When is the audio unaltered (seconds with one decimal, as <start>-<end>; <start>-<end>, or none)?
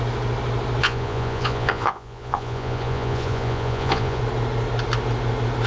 0.0-0.8; 4.2-5.7